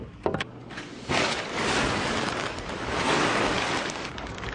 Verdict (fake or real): fake